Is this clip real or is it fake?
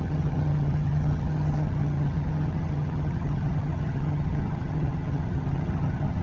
fake